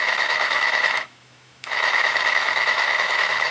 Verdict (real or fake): fake